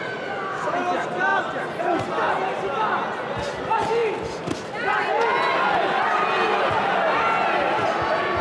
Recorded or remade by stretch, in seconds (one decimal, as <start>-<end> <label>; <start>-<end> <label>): 0.0-8.4 recorded